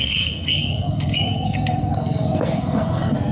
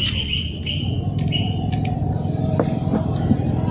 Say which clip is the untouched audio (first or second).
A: second